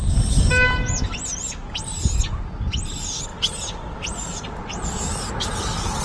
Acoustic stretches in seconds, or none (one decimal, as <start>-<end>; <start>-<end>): 0.0-6.0